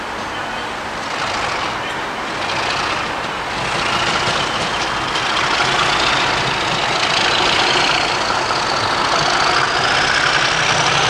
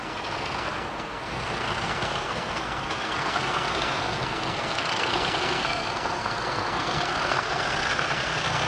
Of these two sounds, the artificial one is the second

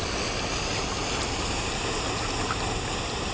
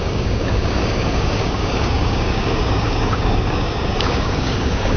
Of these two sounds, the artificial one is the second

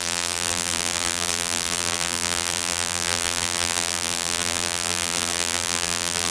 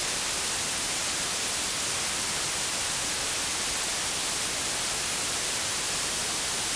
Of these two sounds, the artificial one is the first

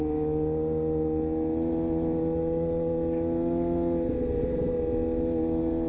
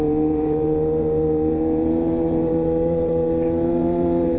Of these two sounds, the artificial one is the second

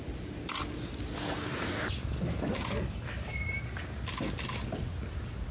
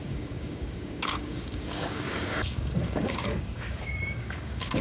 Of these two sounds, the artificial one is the second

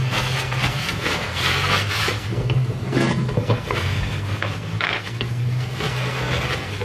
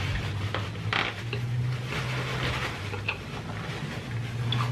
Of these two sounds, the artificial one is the first